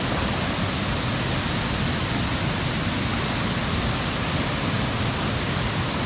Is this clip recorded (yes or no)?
yes